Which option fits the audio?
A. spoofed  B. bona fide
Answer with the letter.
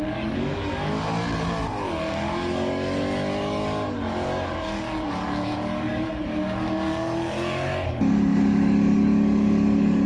A